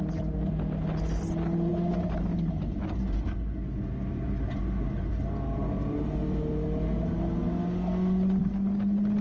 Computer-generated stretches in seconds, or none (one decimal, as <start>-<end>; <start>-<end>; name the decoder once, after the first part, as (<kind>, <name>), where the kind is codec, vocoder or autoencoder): none